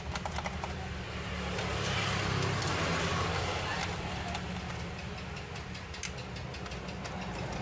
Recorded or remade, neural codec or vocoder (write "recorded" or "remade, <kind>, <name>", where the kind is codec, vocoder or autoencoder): recorded